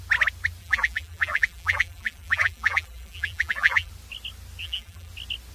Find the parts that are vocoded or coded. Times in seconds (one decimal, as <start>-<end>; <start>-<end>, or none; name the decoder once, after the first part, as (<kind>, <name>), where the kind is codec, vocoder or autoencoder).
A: 0.6-3.9 (vocoder, BigVGAN v2); 4.6-5.1